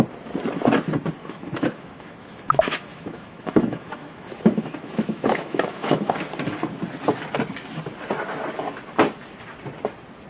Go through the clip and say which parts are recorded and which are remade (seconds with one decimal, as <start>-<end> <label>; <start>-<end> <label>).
0.0-1.2 recorded; 1.2-6.1 remade; 6.1-10.3 recorded